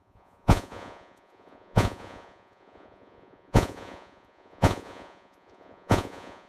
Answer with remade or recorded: remade